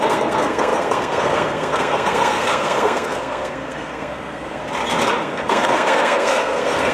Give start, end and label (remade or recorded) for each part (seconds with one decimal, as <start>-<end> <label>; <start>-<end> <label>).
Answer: 0.0-4.6 remade; 4.6-5.2 recorded; 5.2-6.9 remade